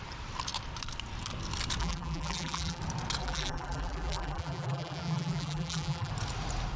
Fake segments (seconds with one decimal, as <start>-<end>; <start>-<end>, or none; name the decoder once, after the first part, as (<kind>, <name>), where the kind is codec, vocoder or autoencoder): 1.8-2.8 (vocoder, BigVGAN v2); 3.2-6.1

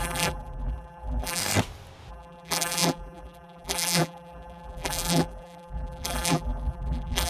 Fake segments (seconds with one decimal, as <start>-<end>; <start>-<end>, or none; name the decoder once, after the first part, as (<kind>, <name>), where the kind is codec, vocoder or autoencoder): 0.0-1.4 (vocoder, BigVGAN v2); 2.1-7.3

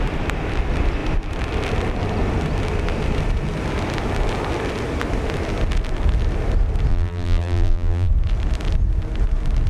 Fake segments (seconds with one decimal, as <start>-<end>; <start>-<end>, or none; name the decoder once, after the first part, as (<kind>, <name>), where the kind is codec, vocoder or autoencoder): 6.9-8.1 (vocoder, BigVGAN v2)

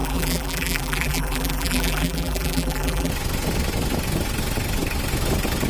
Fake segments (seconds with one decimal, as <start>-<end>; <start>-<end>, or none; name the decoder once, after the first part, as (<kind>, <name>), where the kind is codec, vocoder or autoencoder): 0.0-3.1 (vocoder, BigVGAN v2)

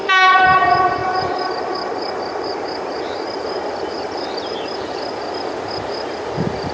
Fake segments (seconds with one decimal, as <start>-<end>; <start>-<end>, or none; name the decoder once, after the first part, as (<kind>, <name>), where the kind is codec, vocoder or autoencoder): 1.0-5.0 (vocoder, BigVGAN v2)

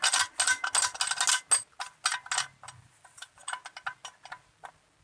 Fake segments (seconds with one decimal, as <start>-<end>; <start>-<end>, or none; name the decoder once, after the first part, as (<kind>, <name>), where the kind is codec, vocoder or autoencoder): none

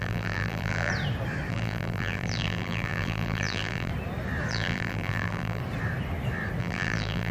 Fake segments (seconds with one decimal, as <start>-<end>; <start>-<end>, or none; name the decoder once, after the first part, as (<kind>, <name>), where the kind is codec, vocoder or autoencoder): 0.0-0.9 (vocoder, BigVGAN v2); 1.5-3.9; 4.5-5.6; 6.6-7.3